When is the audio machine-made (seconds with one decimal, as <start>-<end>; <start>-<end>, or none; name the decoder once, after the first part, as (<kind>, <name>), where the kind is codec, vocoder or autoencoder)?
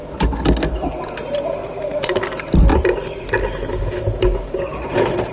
none